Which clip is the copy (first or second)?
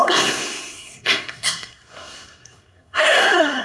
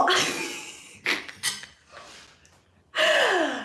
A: first